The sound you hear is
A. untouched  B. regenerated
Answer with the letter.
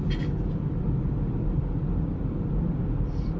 A